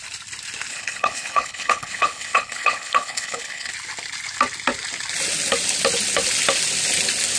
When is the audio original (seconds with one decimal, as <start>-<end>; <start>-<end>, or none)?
0.0-0.7; 3.7-7.4